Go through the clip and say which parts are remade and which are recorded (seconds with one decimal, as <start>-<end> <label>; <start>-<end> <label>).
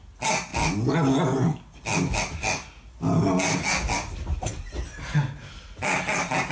0.0-6.5 recorded